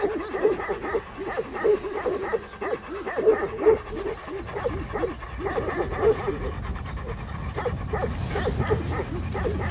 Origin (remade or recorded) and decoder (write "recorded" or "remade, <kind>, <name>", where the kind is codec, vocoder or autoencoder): recorded